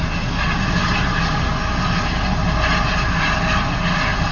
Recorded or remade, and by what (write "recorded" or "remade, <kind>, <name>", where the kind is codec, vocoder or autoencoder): recorded